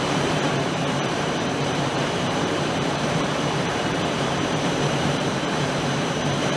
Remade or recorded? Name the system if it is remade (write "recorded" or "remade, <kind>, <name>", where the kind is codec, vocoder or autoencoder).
remade, vocoder, BigVGAN v2